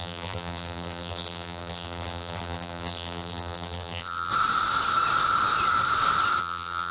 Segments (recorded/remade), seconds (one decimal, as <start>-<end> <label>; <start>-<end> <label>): 0.0-4.3 remade; 4.3-6.4 recorded; 6.4-6.9 remade